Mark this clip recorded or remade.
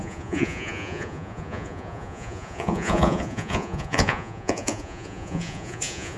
remade